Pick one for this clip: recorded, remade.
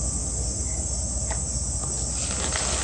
recorded